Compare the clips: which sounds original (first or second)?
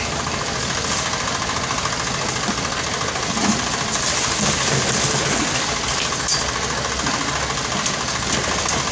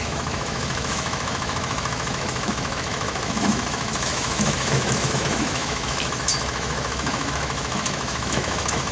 first